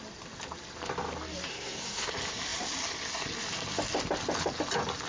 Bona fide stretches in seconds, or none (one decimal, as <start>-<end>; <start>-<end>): 0.0-1.5; 2.1-5.1